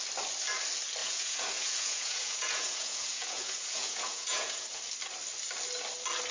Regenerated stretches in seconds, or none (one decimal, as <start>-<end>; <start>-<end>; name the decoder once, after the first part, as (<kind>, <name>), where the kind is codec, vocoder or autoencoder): 1.0-4.8 (vocoder, Vocos)